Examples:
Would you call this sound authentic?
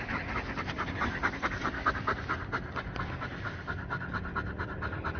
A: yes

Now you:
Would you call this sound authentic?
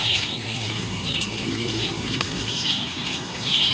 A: no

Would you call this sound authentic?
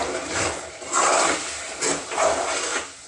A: yes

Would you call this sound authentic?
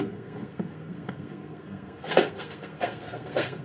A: no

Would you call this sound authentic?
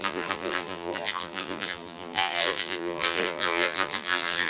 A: no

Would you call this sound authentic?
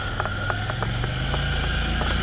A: yes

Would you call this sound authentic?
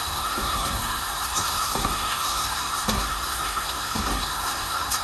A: no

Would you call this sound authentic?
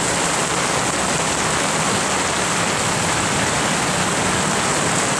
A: yes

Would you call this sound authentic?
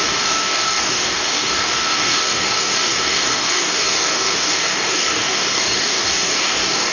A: no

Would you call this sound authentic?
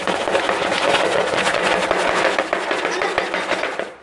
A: no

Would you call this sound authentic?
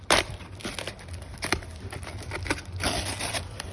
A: yes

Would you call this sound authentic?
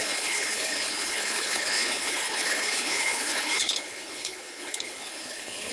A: no